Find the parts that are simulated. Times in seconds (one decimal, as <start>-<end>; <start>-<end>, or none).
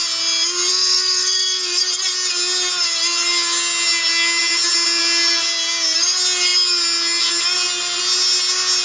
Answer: 0.7-1.8